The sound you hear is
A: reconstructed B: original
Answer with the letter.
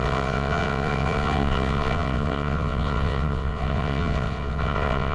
A